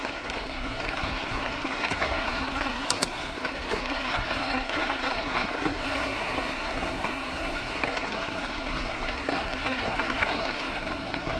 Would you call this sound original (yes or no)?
no